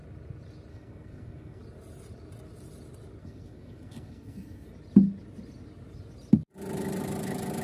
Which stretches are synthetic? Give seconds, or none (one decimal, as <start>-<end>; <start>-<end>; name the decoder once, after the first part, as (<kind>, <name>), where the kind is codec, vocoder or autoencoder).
0.7-1.6 (codec, SNAC); 3.2-4.7